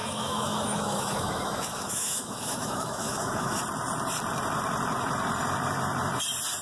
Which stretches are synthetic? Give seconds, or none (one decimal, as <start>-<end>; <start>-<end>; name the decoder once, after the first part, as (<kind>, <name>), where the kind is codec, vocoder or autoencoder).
0.0-3.6 (autoencoder, DAC-VAE)